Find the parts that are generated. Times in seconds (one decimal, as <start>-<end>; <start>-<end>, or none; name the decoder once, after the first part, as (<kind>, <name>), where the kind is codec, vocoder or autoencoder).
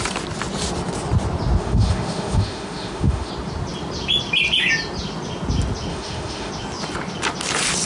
1.6-3.3 (autoencoder, DAC-VAE); 5.9-6.5